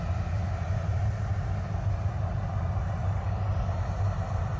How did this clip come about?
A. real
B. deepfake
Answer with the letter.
A